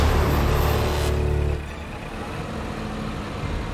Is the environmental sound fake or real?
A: real